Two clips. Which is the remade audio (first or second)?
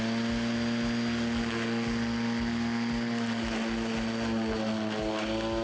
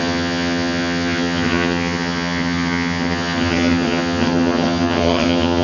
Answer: second